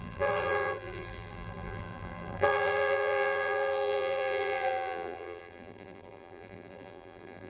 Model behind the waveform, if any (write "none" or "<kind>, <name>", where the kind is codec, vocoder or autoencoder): vocoder, BigVGAN v2